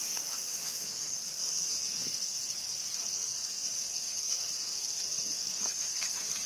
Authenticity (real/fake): fake